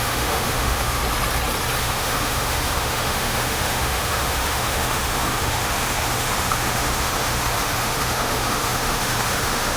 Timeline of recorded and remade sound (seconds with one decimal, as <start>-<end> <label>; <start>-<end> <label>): 0.0-1.0 remade; 1.0-1.8 recorded; 1.8-9.8 remade